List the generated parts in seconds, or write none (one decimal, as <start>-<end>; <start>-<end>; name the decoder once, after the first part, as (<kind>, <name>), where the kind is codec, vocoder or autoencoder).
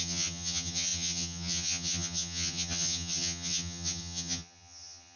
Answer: 0.0-5.2 (vocoder, HiFi-GAN)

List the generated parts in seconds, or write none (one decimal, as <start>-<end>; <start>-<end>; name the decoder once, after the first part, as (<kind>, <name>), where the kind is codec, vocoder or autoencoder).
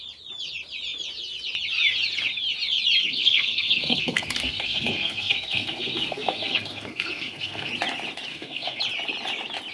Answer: 3.0-7.7 (codec, SNAC); 8.3-8.8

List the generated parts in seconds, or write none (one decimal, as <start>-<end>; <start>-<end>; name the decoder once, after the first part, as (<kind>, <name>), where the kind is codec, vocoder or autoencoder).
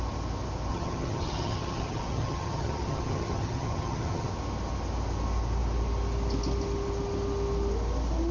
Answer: 0.7-4.3 (vocoder, HiFi-GAN)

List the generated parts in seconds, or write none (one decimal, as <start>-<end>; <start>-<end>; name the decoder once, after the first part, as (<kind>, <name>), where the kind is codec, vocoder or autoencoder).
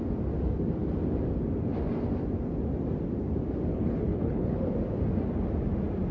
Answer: 3.7-4.7 (codec, HILCodec)